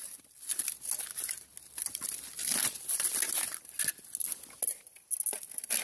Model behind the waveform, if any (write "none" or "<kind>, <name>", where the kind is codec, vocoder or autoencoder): none